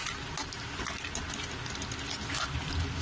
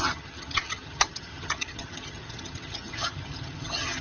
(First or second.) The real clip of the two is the first